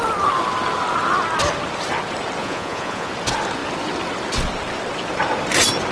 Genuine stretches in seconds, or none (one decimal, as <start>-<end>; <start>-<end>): 0.0-2.4; 3.1-5.9